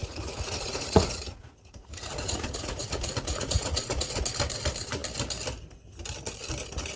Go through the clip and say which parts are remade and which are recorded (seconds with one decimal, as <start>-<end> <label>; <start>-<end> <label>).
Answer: 0.0-4.2 remade; 4.2-7.0 recorded